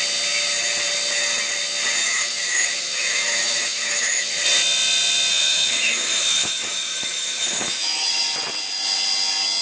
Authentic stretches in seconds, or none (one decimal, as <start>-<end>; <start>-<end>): 0.0-2.0; 4.3-5.3; 8.1-9.6

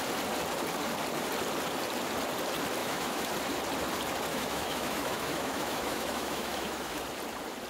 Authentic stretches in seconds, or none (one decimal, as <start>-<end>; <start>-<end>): 0.0-2.8; 3.3-4.3; 7.0-7.7

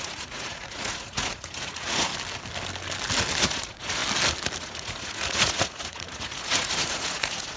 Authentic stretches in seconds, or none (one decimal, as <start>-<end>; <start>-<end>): 2.1-3.4; 4.0-4.6

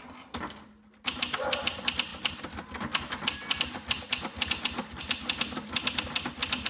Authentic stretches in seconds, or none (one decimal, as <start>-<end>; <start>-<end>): 0.0-6.7

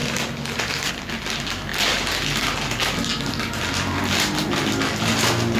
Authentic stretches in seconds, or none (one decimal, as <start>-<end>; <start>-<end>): 0.0-5.6

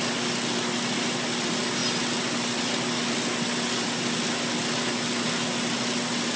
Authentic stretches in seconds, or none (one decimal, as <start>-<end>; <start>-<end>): 0.0-6.4

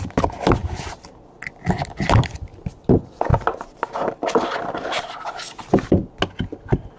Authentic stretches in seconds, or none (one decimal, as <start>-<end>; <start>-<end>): 0.0-7.0

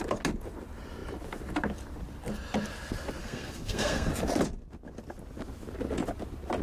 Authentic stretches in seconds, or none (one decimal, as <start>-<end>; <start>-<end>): 0.0-3.2; 4.1-6.6